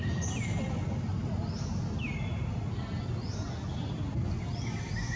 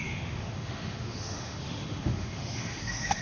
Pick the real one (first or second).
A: first